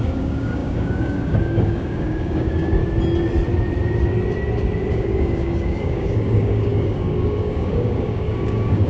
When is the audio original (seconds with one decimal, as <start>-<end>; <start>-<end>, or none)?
2.8-4.9